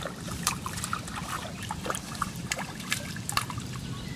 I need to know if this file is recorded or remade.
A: remade